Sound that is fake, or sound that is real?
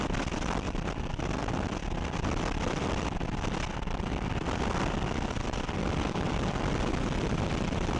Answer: fake